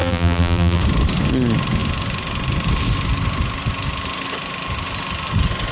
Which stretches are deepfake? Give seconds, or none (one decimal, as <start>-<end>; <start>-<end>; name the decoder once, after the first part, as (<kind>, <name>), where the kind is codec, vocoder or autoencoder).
0.0-0.8 (vocoder, BigVGAN v2)